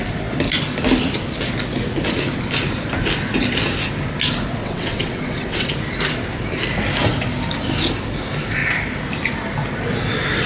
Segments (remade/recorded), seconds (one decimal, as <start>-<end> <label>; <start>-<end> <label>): 0.0-4.6 recorded; 4.6-5.7 remade; 5.7-10.5 recorded